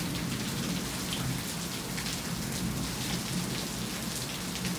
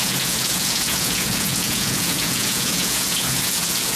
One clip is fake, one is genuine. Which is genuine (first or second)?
first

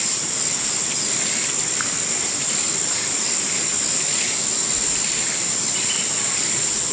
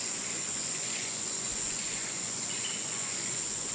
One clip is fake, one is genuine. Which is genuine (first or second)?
first